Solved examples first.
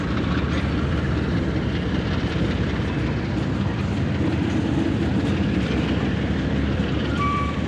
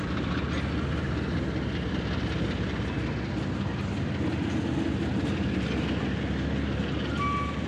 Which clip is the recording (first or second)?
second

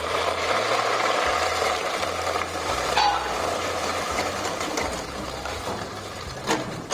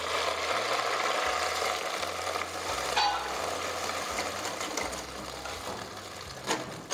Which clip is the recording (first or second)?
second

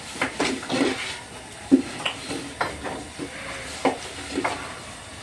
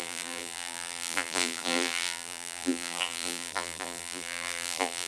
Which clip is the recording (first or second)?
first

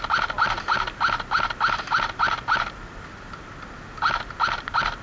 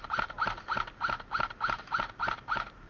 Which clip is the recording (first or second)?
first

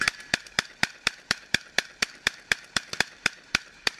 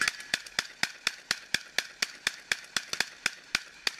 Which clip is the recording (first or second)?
second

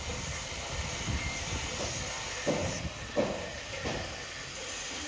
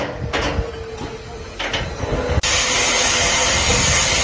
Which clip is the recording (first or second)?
second